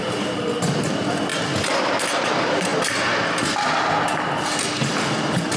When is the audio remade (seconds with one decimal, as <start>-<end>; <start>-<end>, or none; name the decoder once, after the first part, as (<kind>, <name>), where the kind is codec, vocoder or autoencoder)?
none